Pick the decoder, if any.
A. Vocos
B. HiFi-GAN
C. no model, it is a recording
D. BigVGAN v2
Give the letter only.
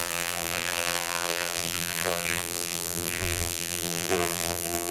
D